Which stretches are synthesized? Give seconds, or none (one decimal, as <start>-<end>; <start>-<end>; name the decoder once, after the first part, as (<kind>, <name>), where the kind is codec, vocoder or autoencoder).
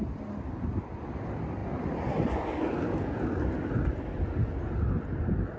none